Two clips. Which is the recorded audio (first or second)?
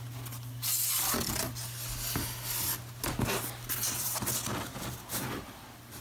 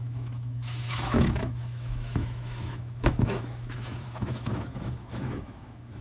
first